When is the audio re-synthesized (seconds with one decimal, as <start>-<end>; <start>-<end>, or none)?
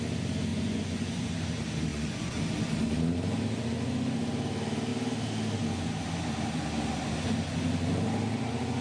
0.5-1.3; 1.9-2.4